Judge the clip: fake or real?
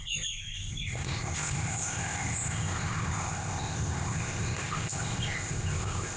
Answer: fake